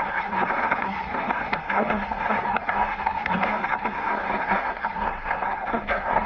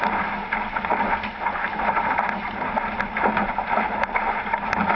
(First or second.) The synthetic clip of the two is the first